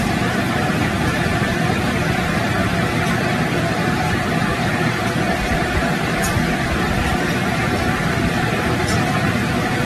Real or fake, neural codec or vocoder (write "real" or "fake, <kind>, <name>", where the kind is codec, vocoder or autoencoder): real